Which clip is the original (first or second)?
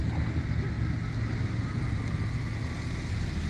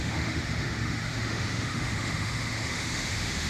first